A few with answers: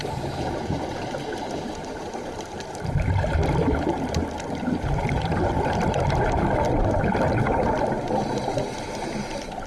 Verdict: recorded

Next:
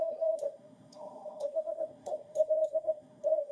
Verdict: remade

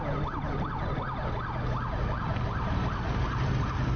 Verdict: recorded